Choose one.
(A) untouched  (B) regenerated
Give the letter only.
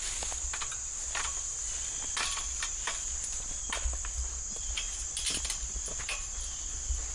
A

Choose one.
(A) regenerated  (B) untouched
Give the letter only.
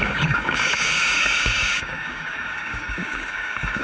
A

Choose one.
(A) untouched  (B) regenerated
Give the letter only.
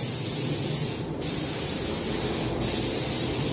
A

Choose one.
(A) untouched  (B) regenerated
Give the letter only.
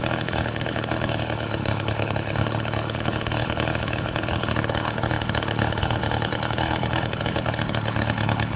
B